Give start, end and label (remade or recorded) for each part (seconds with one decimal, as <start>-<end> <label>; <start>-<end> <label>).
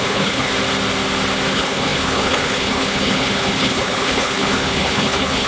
0.0-0.5 remade; 0.5-1.5 recorded; 1.5-5.5 remade